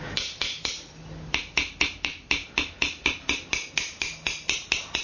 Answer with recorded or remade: recorded